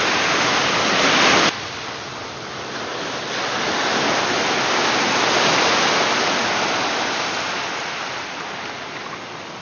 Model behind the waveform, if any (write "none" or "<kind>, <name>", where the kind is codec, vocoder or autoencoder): none